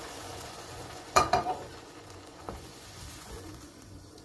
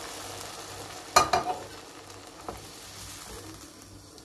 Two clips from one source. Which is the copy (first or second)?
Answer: first